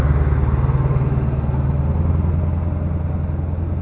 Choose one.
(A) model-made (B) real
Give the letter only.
B